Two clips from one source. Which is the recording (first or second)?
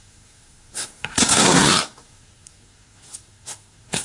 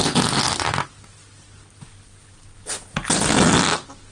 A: second